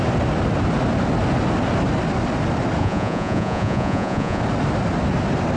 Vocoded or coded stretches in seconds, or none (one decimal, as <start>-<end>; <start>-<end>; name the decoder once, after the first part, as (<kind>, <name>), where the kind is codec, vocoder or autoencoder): 2.8-4.4 (vocoder, Vocos)